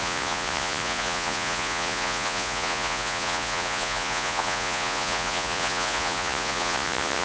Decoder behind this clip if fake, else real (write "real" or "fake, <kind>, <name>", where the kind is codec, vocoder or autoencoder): fake, vocoder, Vocos